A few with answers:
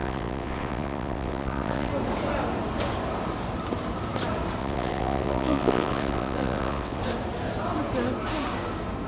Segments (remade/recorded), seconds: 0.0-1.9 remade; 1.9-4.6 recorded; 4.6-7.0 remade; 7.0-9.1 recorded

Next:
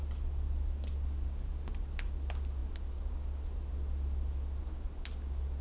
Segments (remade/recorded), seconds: 0.0-5.6 recorded

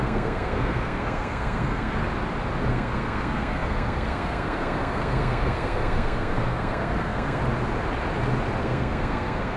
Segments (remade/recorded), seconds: 0.0-2.0 remade; 2.0-2.7 recorded; 2.7-7.4 remade; 7.4-8.6 recorded; 8.6-9.6 remade

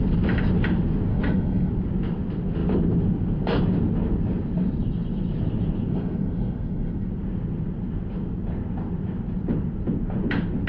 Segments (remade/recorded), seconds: 0.0-1.1 recorded; 1.1-1.7 remade; 1.7-5.9 recorded; 5.9-7.1 remade; 7.1-10.7 recorded

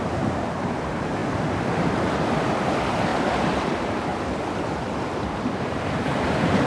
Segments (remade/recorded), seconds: 0.0-1.2 remade; 1.2-2.6 recorded; 2.6-4.1 remade; 4.1-5.6 recorded; 5.6-6.7 remade

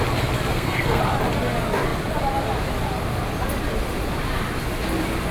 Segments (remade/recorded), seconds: 0.0-0.5 recorded; 0.5-1.0 remade; 1.0-5.3 recorded

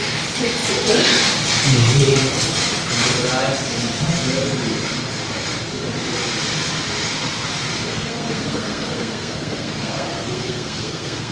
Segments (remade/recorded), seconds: 0.0-7.9 recorded; 7.9-11.3 remade